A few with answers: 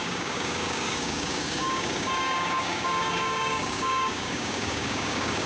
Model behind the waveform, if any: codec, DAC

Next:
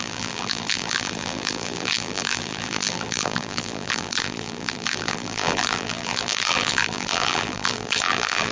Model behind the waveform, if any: vocoder, BigVGAN v2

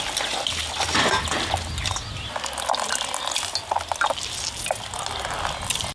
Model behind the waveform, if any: none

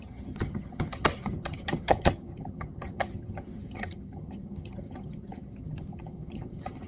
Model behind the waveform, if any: vocoder, HiFi-GAN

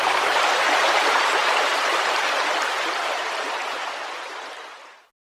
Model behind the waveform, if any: vocoder, BigVGAN v2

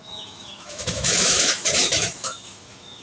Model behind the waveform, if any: autoencoder, DAC-VAE